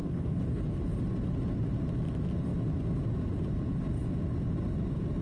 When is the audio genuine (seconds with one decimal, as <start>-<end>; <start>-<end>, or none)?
0.8-5.2